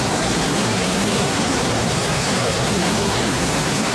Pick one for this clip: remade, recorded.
remade